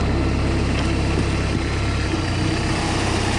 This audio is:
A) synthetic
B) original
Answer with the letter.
B